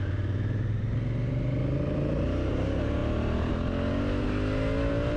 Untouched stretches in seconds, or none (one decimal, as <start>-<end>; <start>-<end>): 0.0-5.2